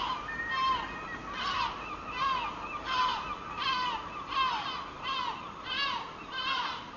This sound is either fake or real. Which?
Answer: real